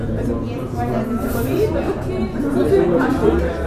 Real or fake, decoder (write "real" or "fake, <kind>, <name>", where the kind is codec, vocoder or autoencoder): real